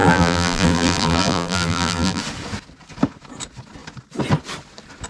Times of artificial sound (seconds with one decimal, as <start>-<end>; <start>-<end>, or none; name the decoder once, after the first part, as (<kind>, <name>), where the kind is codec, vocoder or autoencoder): 0.0-2.2 (vocoder, BigVGAN v2)